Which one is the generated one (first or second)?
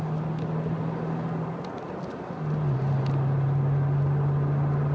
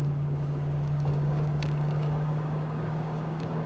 second